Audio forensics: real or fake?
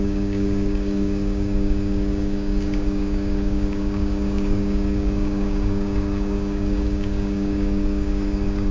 fake